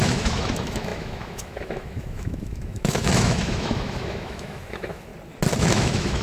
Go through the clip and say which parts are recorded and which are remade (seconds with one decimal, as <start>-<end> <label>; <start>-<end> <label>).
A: 0.0-5.1 remade; 5.1-5.6 recorded; 5.6-6.2 remade